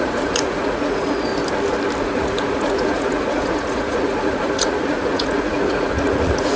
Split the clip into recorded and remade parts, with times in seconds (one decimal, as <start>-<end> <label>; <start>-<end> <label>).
0.0-1.3 remade; 1.3-2.0 recorded; 2.0-6.6 remade